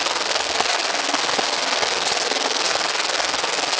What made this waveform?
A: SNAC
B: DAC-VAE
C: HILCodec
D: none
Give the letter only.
A